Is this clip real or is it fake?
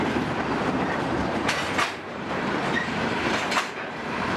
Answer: fake